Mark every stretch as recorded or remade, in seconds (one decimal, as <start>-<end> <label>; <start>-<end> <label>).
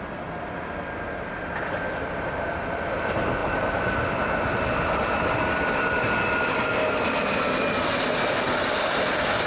0.0-9.5 recorded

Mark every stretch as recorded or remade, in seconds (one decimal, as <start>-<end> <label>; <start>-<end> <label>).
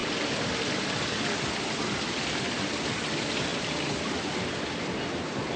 0.0-5.6 recorded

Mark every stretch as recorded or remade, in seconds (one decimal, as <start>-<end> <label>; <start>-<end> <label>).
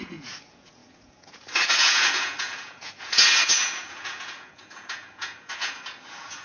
0.0-6.4 remade